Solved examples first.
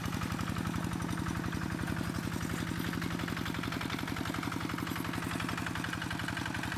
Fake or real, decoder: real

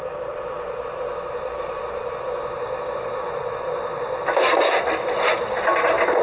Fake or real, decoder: real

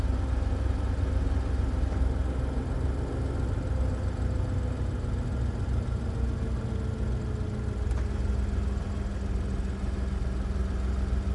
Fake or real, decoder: real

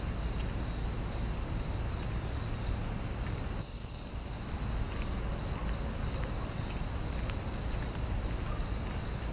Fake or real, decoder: real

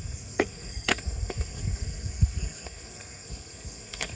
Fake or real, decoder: fake, codec, SNAC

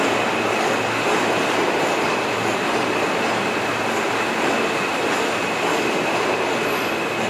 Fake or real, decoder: real